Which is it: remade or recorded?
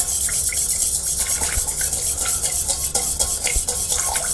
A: recorded